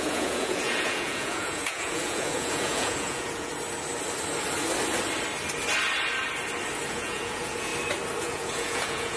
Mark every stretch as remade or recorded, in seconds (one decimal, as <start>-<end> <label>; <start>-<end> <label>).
0.0-3.5 remade; 3.5-6.9 recorded; 6.9-7.7 remade; 7.7-8.2 recorded; 8.2-9.2 remade